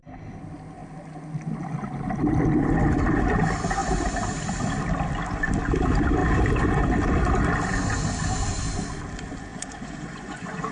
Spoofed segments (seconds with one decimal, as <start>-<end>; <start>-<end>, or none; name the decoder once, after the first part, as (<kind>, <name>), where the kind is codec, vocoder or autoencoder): 9.5-10.7 (vocoder, Vocos)